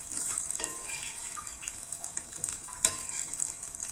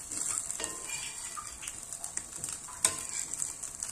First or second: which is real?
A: second